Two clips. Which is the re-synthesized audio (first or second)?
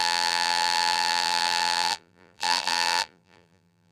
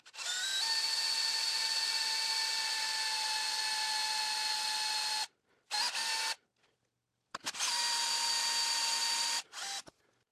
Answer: first